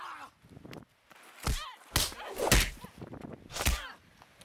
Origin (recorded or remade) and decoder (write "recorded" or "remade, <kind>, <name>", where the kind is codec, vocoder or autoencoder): recorded